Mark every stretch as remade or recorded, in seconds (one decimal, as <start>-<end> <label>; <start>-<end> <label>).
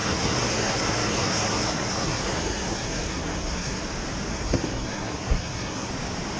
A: 0.0-3.8 remade; 3.8-4.3 recorded; 4.3-5.9 remade; 5.9-6.4 recorded